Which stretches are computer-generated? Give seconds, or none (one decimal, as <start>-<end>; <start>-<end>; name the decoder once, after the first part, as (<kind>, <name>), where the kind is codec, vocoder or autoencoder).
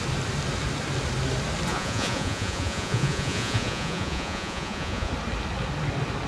1.7-5.1 (vocoder, Vocos)